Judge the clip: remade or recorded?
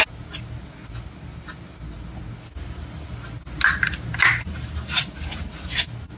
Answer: recorded